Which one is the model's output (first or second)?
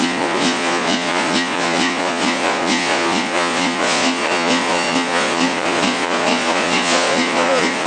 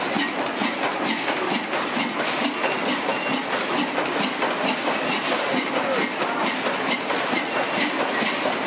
first